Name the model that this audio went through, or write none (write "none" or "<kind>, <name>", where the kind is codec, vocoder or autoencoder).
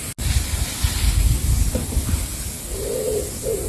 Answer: none